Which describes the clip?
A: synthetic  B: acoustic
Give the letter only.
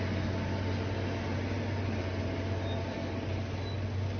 B